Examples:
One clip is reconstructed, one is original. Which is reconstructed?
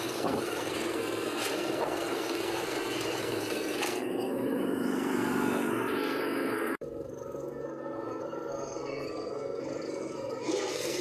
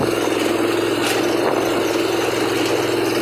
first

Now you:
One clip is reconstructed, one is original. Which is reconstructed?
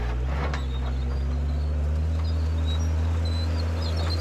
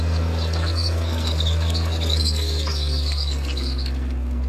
second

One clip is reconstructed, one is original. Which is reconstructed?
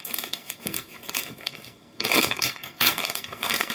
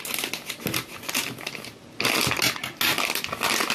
first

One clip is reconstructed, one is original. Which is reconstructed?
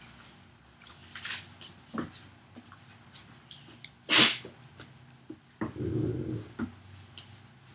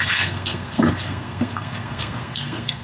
second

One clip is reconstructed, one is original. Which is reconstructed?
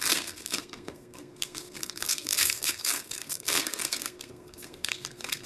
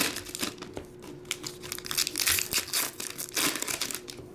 first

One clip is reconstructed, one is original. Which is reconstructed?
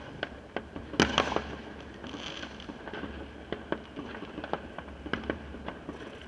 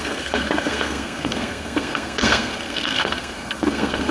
second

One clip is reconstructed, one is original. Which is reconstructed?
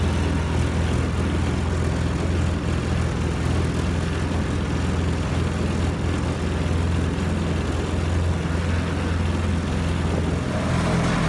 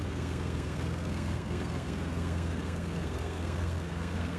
second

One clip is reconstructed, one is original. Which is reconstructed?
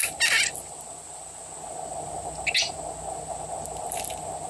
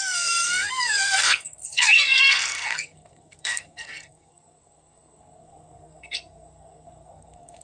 second